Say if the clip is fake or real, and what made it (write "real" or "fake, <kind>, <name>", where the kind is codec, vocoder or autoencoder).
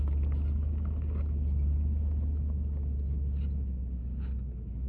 real